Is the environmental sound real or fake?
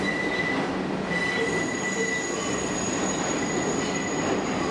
real